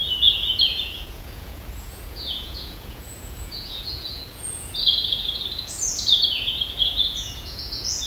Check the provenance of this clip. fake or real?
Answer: fake